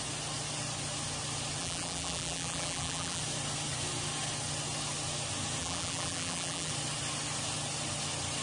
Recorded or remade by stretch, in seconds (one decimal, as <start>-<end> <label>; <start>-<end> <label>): 0.0-1.6 recorded; 1.6-3.2 remade; 3.2-5.6 recorded; 5.6-6.7 remade; 6.7-8.4 recorded

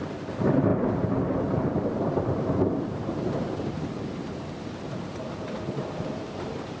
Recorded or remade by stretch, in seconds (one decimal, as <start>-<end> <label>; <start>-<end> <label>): 0.0-6.8 remade

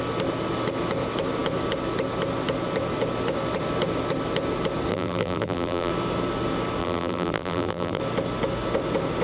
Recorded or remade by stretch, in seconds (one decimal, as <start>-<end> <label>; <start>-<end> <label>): 0.0-4.9 recorded; 4.9-5.9 remade; 5.9-6.8 recorded; 6.8-8.0 remade; 8.0-9.2 recorded